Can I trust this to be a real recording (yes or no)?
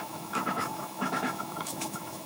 no